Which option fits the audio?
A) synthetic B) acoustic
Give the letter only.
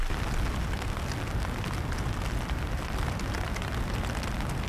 B